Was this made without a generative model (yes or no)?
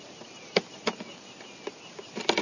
yes